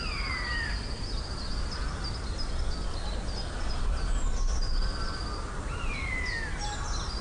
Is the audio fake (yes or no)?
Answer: no